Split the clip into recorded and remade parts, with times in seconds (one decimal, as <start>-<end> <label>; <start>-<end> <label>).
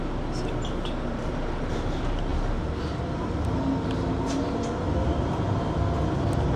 0.0-6.6 recorded